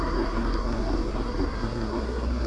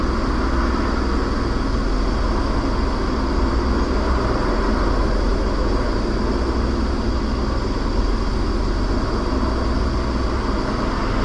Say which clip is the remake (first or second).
first